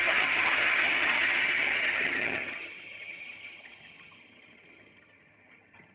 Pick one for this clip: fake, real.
fake